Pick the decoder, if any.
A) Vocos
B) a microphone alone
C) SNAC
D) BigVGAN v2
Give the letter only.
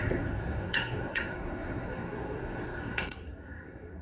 C